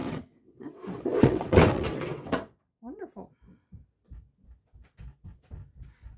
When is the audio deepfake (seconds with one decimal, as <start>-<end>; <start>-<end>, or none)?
0.0-3.7